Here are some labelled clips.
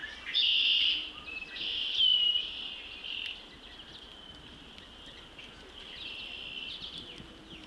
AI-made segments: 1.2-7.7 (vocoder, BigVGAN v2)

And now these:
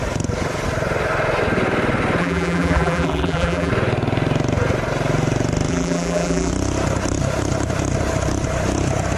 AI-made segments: 2.2-3.7 (vocoder, BigVGAN v2); 5.7-6.5

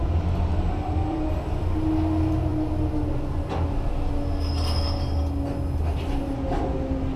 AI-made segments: 0.5-1.3 (vocoder, BigVGAN v2)

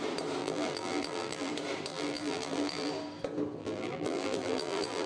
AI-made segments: 0.4-1.5 (vocoder, BigVGAN v2); 1.9-2.9; 3.6-5.1

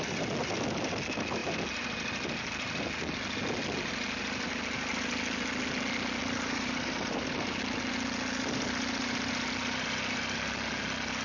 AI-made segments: 6.2-7.6 (vocoder, BigVGAN v2)

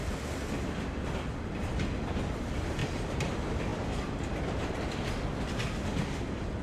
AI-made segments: 2.8-3.3 (vocoder, BigVGAN v2)

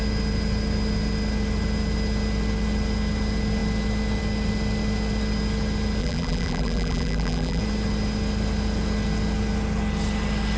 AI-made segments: 6.0-7.6 (vocoder, BigVGAN v2)

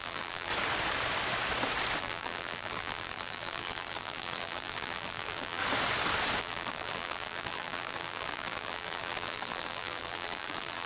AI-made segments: 0.0-0.5 (vocoder, BigVGAN v2); 2.0-5.6; 6.4-10.9